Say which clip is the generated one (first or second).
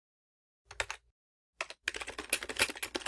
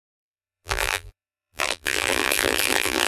second